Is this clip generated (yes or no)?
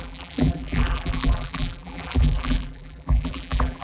yes